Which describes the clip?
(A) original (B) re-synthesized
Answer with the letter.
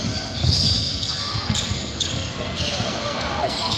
B